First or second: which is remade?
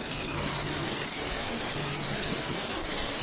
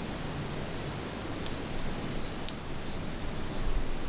first